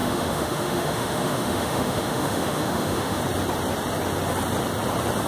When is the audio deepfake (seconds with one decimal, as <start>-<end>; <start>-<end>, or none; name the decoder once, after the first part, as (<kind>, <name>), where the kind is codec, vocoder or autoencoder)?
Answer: 0.0-3.2 (autoencoder, DAC-VAE)